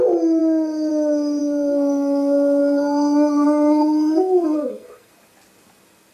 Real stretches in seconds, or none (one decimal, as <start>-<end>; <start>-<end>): 0.0-1.4; 5.1-6.1